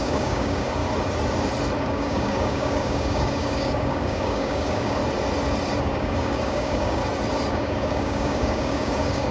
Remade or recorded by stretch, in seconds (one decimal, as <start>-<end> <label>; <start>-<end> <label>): 0.0-0.8 remade; 0.8-1.8 recorded; 1.8-5.0 remade; 5.0-5.8 recorded; 5.8-7.0 remade; 7.0-7.5 recorded; 7.5-9.3 remade